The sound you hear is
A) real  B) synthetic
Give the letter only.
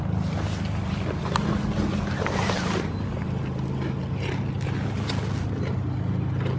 A